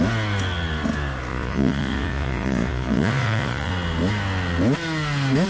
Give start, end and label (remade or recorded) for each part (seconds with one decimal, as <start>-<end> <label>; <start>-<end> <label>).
0.0-1.3 recorded; 1.3-3.7 remade; 3.7-5.5 recorded